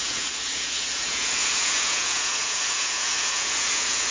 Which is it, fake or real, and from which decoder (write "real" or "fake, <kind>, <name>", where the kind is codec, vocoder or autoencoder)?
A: fake, vocoder, Vocos